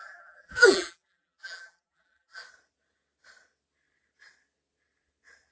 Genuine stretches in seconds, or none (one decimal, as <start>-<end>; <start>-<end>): 2.4-5.5